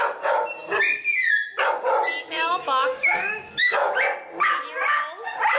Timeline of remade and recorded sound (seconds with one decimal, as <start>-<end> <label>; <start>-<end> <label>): 0.0-2.2 recorded; 2.2-3.9 remade; 3.9-5.6 recorded